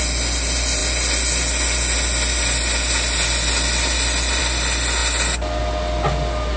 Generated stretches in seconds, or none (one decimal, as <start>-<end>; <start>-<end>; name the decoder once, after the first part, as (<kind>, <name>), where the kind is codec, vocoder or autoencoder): none